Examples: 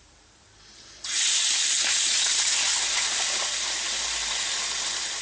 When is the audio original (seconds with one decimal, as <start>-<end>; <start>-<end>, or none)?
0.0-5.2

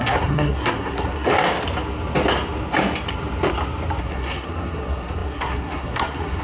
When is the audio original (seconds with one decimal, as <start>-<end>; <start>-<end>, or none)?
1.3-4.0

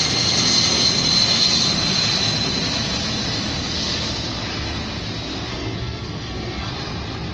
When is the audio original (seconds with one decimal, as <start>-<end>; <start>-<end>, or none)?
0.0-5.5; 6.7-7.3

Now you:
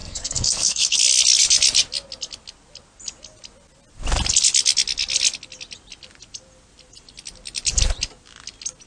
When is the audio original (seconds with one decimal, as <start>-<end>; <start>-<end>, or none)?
1.0-8.9

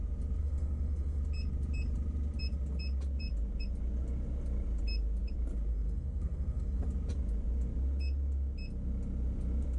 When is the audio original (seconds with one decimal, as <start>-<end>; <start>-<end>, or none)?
0.0-0.4; 1.2-5.7; 6.8-9.8